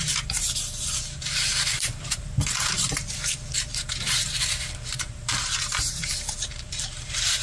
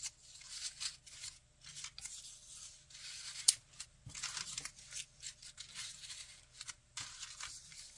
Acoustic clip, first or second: second